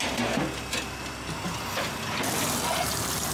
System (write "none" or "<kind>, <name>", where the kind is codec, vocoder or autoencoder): none